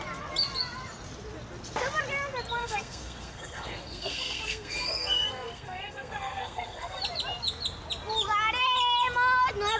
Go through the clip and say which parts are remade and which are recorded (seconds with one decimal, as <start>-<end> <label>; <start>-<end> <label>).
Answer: 0.0-2.6 recorded; 2.6-7.0 remade; 7.0-9.8 recorded